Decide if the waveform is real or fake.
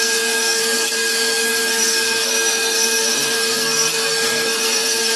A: fake